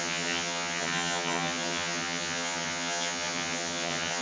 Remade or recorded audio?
remade